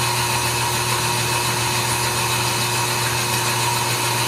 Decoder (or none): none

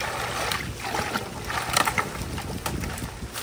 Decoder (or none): none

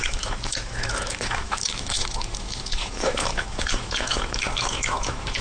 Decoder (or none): autoencoder, DAC-VAE